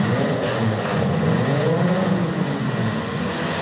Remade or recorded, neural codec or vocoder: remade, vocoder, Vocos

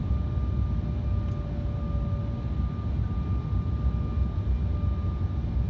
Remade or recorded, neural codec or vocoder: recorded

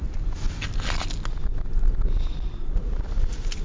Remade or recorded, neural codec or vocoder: recorded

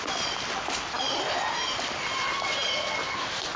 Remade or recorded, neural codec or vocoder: recorded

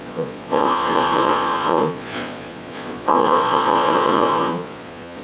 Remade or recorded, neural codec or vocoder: remade, vocoder, Vocos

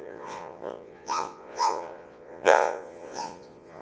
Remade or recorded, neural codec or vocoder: remade, vocoder, Vocos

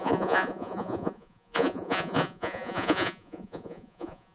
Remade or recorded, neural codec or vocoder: remade, vocoder, Vocos